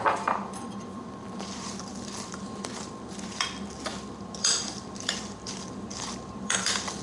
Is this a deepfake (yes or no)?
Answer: yes